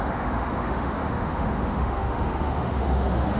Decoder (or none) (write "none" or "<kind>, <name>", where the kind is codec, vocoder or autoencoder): autoencoder, DAC-VAE